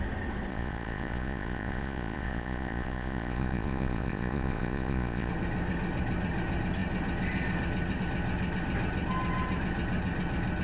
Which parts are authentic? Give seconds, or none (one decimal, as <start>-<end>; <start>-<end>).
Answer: 0.0-0.5; 5.3-10.6